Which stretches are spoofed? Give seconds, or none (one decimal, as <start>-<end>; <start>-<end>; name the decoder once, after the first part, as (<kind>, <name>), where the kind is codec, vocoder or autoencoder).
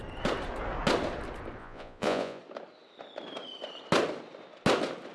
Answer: 1.6-2.4 (vocoder, Vocos)